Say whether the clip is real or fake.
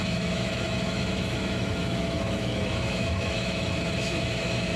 fake